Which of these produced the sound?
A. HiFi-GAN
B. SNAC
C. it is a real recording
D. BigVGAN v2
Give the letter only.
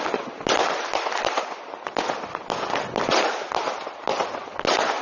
C